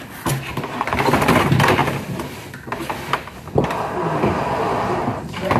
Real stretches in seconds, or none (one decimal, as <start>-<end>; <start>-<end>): 0.0-5.6